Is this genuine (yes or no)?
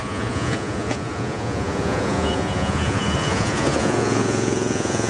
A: no